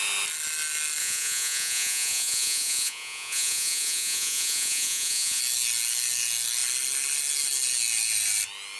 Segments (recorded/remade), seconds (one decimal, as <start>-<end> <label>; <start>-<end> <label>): 0.0-1.0 recorded; 1.0-5.4 remade; 5.4-8.8 recorded